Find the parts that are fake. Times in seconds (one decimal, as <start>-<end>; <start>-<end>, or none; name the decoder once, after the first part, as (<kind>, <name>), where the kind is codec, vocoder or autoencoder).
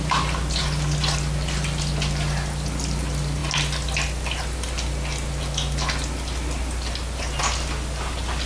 none